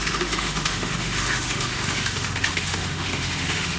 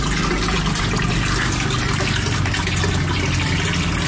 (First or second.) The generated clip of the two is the first